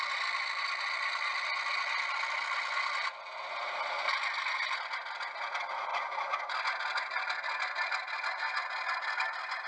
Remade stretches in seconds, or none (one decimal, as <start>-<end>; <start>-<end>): none